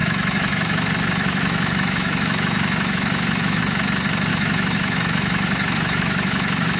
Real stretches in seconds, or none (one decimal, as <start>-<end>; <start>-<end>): 3.6-4.3